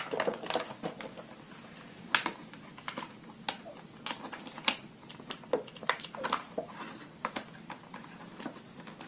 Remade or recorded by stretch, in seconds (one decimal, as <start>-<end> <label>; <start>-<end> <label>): 0.0-1.7 recorded; 1.7-3.2 remade; 3.2-9.1 recorded